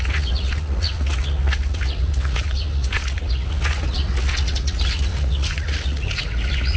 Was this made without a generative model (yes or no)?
no